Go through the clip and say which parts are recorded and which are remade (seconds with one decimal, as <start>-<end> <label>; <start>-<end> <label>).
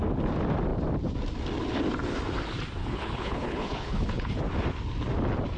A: 0.0-2.8 recorded; 2.8-4.4 remade; 4.4-5.6 recorded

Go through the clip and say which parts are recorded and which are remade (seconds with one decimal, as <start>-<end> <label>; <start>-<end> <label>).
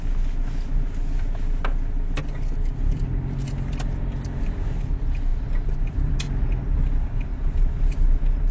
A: 0.0-8.5 recorded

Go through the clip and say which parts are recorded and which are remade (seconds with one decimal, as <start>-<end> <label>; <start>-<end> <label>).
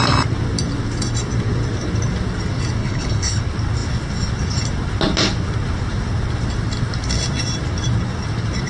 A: 0.0-2.8 recorded; 2.8-3.4 remade; 3.4-8.7 recorded